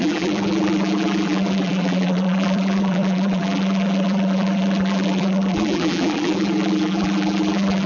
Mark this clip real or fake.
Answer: fake